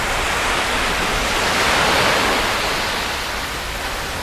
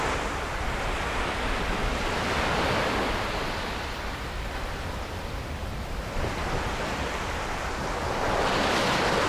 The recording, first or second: first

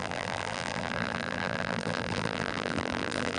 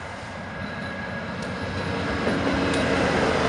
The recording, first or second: second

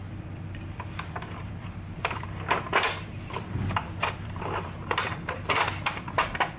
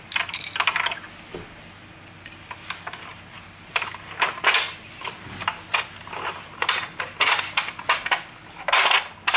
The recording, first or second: second